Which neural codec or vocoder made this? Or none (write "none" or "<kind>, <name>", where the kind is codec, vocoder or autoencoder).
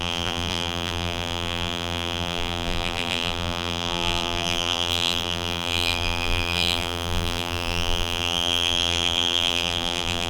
vocoder, BigVGAN v2